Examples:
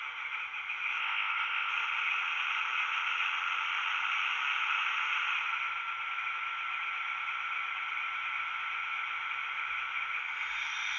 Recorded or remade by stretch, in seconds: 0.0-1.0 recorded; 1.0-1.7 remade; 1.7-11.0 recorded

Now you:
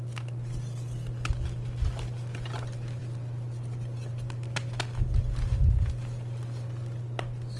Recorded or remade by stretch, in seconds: 0.0-7.6 recorded

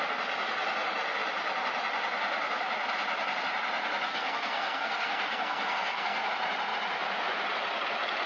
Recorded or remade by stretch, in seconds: 0.0-4.1 recorded; 4.1-6.3 remade; 6.3-8.3 recorded

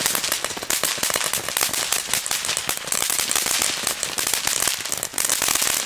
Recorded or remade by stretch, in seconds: 0.0-0.9 recorded; 0.9-4.4 remade; 4.4-5.9 recorded

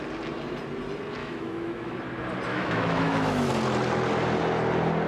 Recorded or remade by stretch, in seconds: 0.0-1.2 recorded; 1.2-2.0 remade; 2.0-2.5 recorded; 2.5-3.5 remade; 3.5-5.1 recorded